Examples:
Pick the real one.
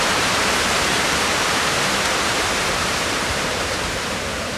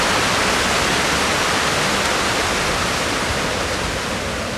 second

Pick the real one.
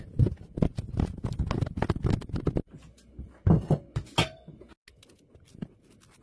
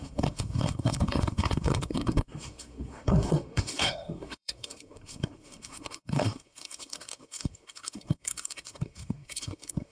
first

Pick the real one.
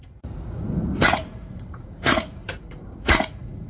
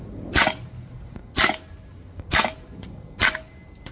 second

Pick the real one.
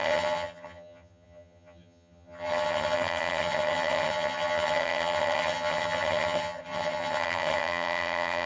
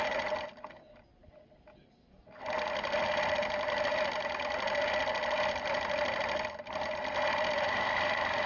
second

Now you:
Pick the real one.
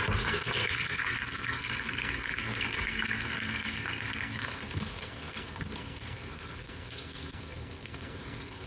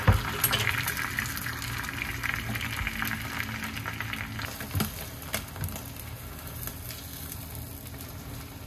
second